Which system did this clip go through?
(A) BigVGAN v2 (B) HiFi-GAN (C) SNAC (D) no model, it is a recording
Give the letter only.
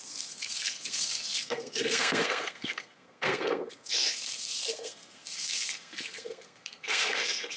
C